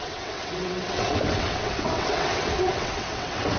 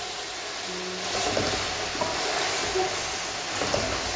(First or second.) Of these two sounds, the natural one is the second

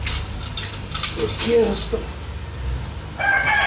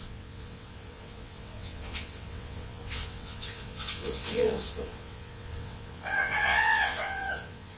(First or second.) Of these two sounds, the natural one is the first